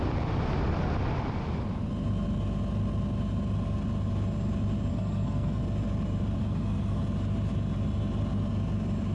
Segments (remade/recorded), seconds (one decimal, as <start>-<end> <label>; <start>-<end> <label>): 0.0-4.9 recorded; 4.9-5.6 remade; 5.6-6.4 recorded; 6.4-7.0 remade; 7.0-9.1 recorded